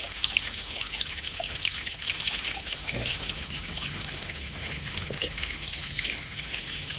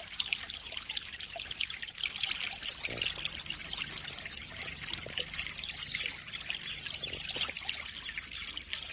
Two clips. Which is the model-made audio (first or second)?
first